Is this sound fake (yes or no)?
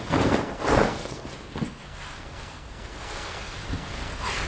yes